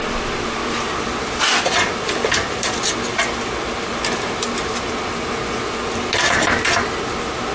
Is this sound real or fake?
real